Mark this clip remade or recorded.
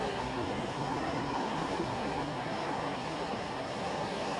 remade